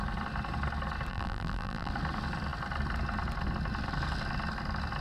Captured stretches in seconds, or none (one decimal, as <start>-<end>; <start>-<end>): 0.0-1.1; 1.9-5.0